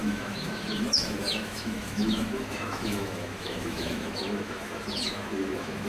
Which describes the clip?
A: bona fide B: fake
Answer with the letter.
B